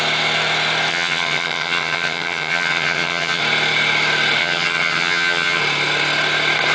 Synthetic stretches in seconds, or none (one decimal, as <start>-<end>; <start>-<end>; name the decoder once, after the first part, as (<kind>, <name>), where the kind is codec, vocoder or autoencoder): 0.9-3.4 (vocoder, HiFi-GAN); 4.4-5.6